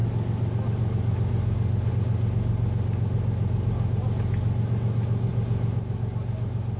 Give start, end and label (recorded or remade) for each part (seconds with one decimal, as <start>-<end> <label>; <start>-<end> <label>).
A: 0.0-6.8 recorded

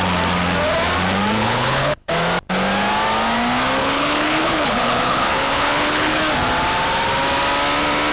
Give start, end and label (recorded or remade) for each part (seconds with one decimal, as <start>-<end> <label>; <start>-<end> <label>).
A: 0.0-1.4 recorded; 1.4-2.1 remade; 2.1-3.8 recorded; 3.8-6.2 remade; 6.2-8.1 recorded

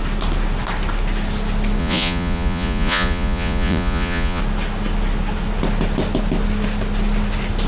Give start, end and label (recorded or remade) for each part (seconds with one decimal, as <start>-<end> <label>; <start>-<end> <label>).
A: 0.0-1.8 recorded; 1.8-4.4 remade; 4.4-7.7 recorded

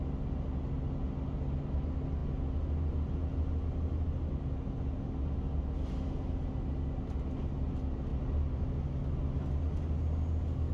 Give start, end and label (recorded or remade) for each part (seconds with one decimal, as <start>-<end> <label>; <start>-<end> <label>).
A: 0.0-10.7 recorded

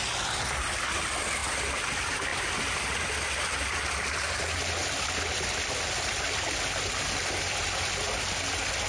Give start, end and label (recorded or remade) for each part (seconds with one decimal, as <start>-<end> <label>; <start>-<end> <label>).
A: 0.0-8.9 recorded